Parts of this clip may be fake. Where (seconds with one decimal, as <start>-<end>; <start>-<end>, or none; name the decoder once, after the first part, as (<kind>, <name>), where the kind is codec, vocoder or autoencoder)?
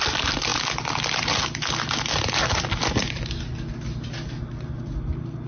none